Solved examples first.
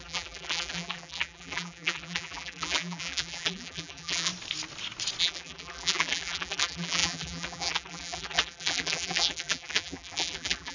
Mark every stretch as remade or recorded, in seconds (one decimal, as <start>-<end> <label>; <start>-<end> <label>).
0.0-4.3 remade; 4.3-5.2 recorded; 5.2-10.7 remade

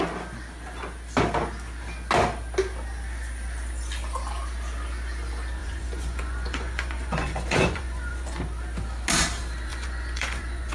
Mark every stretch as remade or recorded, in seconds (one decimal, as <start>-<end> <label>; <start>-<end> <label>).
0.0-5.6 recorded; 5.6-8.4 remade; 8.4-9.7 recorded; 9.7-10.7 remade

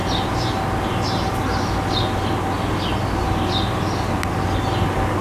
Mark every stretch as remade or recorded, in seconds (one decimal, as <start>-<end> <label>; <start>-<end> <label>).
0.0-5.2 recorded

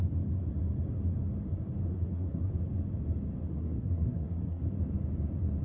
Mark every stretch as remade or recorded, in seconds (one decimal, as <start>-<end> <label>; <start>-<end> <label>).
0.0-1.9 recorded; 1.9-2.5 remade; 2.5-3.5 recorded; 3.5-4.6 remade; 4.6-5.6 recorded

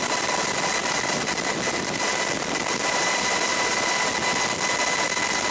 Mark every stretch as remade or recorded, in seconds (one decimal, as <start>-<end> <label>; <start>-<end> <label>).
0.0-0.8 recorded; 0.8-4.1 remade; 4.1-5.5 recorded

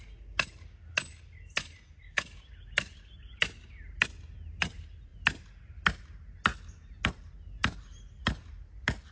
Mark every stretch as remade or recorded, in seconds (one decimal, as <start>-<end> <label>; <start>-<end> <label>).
0.0-9.1 recorded